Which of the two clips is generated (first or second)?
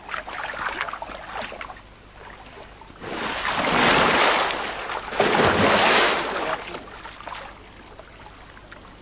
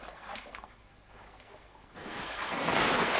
second